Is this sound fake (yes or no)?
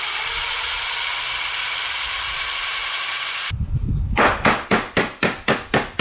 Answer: no